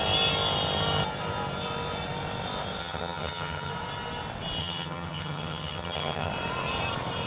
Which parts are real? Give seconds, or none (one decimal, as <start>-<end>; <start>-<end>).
0.0-2.8; 3.7-4.6; 6.3-7.3